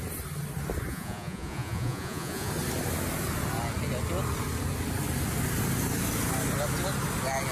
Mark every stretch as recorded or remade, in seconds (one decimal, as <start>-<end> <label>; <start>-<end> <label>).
0.0-0.9 recorded; 0.9-2.5 remade; 2.5-7.5 recorded